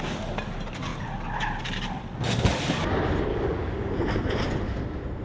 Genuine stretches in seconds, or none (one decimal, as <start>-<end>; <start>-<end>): 0.0-3.3; 3.9-5.2